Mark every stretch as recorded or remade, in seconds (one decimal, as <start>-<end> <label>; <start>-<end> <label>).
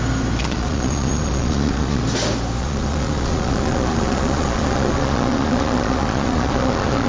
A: 0.0-0.4 recorded; 0.4-2.0 remade; 2.0-2.6 recorded; 2.6-7.1 remade